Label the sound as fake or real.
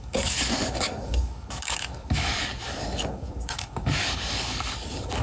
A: fake